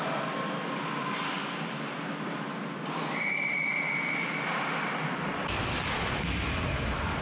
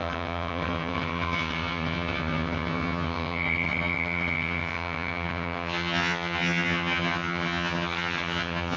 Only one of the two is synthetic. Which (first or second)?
second